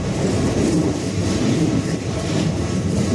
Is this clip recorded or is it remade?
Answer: remade